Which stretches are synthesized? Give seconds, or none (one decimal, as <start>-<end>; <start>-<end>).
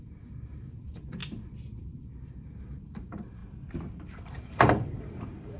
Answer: 0.0-1.2; 1.8-3.4; 4.0-5.6